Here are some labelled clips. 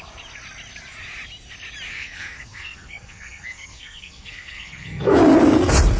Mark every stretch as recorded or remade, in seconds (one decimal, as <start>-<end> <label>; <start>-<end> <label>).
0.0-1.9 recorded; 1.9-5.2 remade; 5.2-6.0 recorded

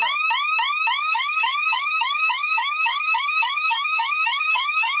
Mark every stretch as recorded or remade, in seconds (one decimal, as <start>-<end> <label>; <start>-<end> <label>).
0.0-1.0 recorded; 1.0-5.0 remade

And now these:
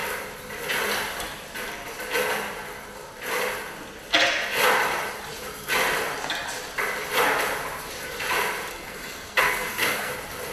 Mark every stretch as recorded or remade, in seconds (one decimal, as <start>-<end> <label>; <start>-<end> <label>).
0.0-8.7 recorded; 8.7-10.1 remade; 10.1-10.5 recorded

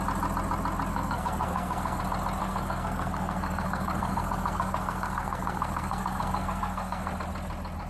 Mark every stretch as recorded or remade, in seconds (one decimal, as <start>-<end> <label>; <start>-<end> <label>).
0.0-0.9 recorded; 0.9-2.0 remade; 2.0-2.4 recorded; 2.4-7.1 remade; 7.1-7.9 recorded